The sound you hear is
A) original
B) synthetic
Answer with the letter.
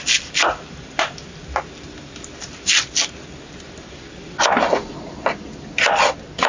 A